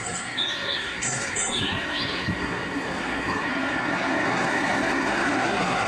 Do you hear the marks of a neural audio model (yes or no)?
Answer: yes